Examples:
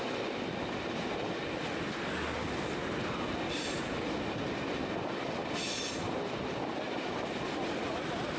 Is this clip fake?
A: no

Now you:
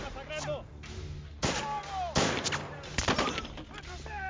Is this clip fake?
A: no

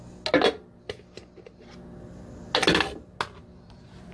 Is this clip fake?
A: no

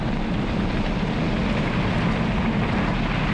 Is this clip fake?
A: no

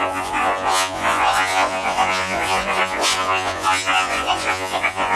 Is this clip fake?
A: yes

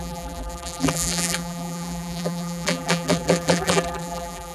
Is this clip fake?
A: yes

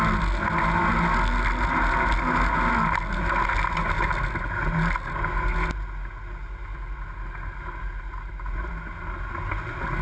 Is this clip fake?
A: no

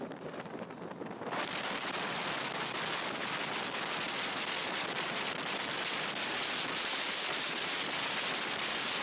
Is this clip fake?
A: no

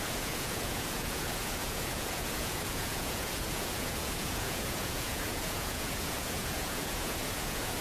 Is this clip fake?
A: yes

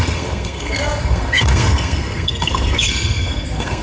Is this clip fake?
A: yes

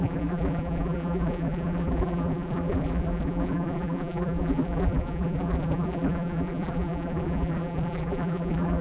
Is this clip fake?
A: yes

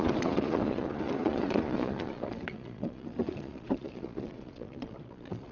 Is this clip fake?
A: yes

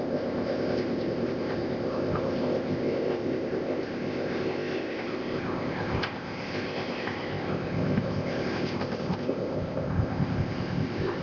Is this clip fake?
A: yes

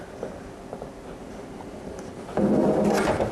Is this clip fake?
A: no